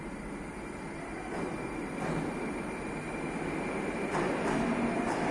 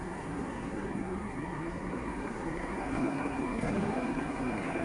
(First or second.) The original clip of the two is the first